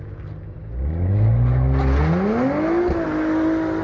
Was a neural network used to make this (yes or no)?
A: no